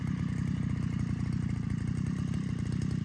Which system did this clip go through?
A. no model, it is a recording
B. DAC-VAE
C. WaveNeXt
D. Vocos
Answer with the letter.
A